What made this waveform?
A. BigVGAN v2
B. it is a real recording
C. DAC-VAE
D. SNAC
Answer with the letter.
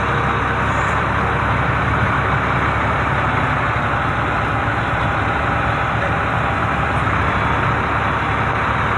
B